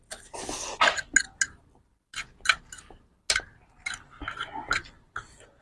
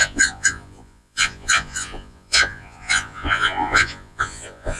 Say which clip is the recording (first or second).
first